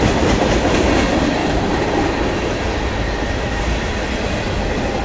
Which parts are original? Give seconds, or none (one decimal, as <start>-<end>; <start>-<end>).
0.0-1.4; 3.6-5.0